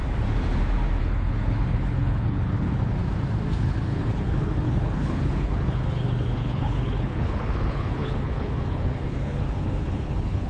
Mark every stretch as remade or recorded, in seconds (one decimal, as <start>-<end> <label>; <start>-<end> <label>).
0.0-1.0 recorded; 1.0-3.0 remade; 3.0-3.6 recorded; 3.6-10.5 remade